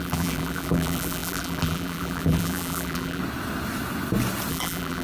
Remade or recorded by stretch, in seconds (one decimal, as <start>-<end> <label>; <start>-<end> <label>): 0.0-3.2 remade; 3.2-4.5 recorded; 4.5-5.0 remade